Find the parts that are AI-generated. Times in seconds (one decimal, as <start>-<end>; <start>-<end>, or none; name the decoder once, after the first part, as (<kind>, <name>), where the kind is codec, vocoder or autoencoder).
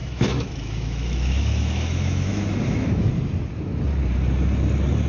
0.0-3.1 (autoencoder, DAC-VAE)